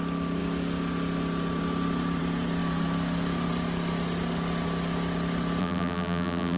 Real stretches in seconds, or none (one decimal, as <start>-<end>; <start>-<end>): 0.0-5.6